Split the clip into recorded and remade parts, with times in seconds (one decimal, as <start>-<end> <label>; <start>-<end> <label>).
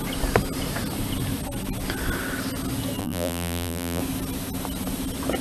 0.0-3.0 recorded; 3.0-4.0 remade; 4.0-5.4 recorded